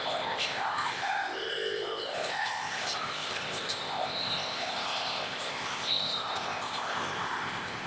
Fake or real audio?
fake